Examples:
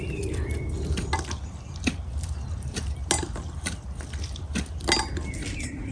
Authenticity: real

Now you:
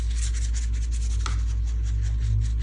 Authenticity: real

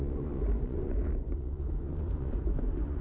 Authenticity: fake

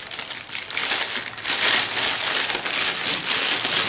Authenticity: real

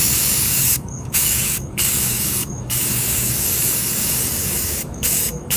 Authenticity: fake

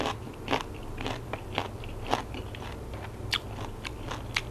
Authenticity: real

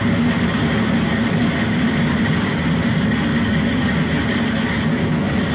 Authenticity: real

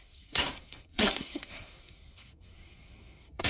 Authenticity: fake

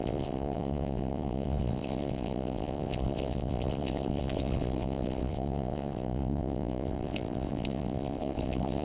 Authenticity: fake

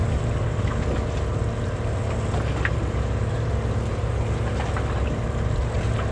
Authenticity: real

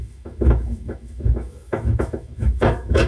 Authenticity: fake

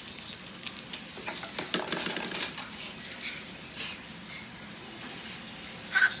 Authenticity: real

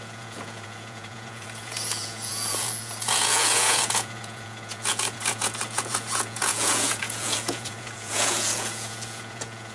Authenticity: fake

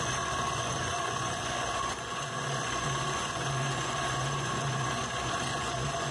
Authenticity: fake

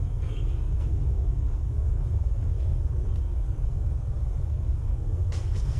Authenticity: fake